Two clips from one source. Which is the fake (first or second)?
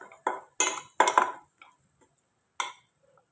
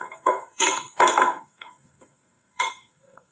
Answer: second